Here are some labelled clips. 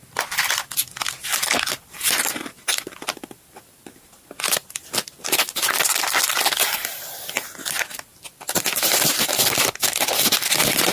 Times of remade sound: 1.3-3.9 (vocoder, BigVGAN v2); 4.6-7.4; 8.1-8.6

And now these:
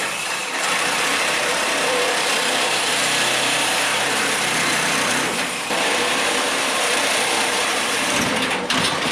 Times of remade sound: 0.0-9.1 (vocoder, BigVGAN v2)

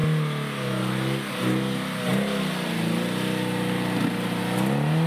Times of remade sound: none

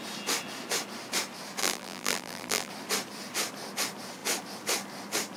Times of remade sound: 1.6-2.7 (vocoder, BigVGAN v2)